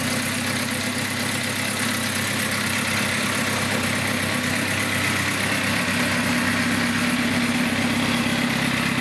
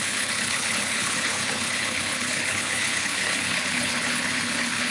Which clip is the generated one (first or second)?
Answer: second